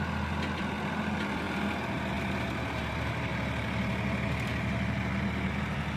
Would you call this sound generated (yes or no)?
no